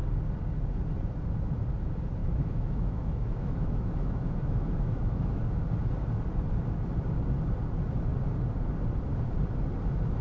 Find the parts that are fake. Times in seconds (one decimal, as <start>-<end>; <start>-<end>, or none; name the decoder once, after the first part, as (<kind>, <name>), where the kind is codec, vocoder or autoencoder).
2.2-5.4 (autoencoder, DAC-VAE)